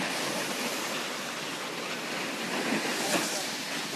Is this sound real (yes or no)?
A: yes